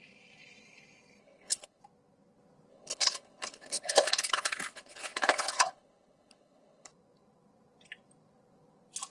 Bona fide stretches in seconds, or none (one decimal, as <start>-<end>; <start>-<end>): 0.0-1.2; 1.8-2.7; 6.9-9.1